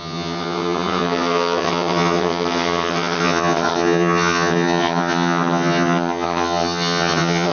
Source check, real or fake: fake